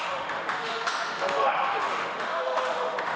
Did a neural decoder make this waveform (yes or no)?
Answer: yes